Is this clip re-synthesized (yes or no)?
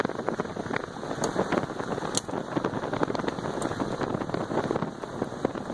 no